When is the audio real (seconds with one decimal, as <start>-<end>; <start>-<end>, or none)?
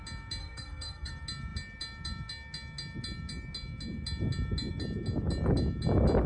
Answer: 0.0-0.4; 1.1-6.3